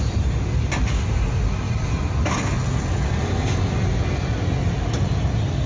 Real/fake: real